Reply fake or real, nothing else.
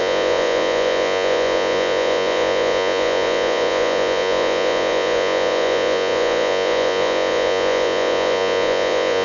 fake